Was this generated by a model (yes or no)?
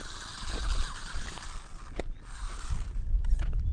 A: no